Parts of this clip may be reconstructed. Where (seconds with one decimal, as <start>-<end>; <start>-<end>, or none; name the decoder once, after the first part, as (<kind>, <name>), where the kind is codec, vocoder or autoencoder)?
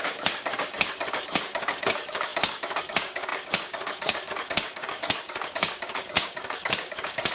0.0-7.3 (codec, DAC)